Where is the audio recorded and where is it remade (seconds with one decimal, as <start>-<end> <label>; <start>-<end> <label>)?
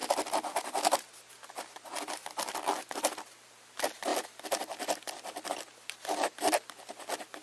0.0-7.4 recorded